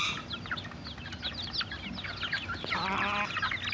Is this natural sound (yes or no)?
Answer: yes